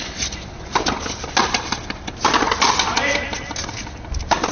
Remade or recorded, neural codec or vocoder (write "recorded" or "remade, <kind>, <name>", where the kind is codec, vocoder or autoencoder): remade, vocoder, BigVGAN v2